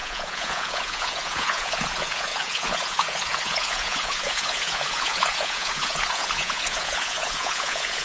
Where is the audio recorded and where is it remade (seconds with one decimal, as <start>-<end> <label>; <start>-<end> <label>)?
0.0-8.0 remade